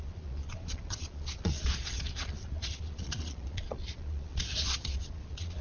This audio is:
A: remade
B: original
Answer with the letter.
A